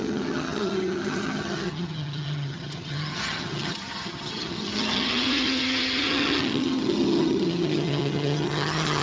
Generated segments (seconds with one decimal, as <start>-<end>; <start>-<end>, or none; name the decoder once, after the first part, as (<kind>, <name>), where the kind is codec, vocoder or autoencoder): 0.0-9.0 (vocoder, HiFi-GAN)